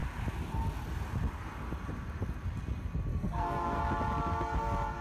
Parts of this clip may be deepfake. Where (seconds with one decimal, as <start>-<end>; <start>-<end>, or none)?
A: 3.1-3.8